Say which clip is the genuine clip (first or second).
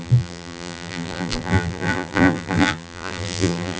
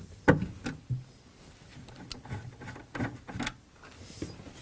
second